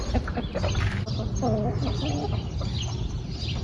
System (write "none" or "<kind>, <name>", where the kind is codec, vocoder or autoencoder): none